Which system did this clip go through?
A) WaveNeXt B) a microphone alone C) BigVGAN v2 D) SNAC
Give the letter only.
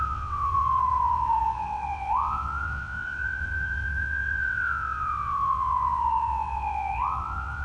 A